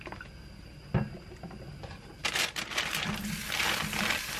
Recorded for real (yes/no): yes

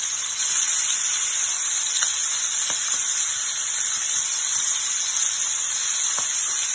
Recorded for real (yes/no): yes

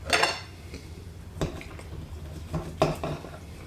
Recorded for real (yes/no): yes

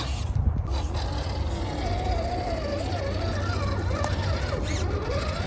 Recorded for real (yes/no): yes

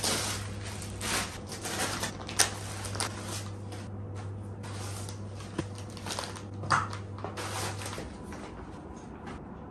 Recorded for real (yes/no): yes